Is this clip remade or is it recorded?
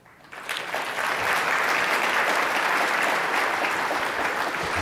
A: recorded